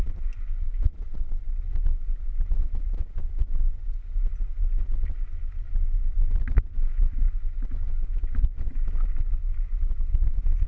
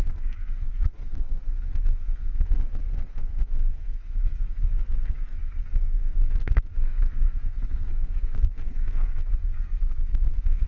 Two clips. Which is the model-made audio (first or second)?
second